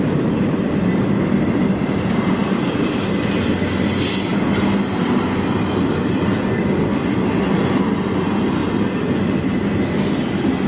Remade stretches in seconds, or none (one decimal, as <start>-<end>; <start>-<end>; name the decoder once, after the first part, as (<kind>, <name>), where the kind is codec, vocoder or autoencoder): none